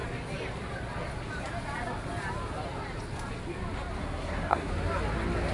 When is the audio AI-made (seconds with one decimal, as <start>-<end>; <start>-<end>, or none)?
4.0-4.7

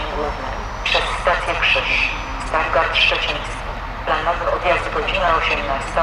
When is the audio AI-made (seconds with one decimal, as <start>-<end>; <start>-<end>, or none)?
none

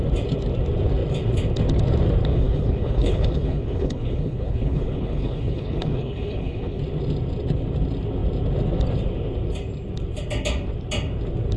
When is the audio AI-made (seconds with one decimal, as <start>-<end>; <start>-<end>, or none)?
2.3-6.8